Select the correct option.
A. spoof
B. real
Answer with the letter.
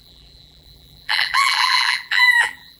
A